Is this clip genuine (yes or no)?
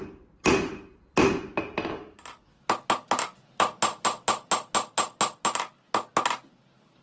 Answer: yes